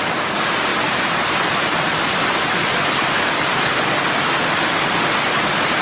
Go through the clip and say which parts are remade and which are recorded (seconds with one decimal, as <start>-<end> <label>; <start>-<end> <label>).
0.0-5.8 recorded